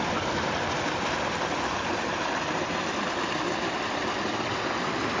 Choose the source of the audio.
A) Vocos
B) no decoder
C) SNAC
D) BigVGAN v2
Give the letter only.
B